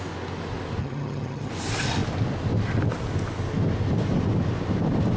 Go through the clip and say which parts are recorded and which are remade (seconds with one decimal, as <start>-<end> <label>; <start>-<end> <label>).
0.0-0.8 recorded; 0.8-1.5 remade; 1.5-5.2 recorded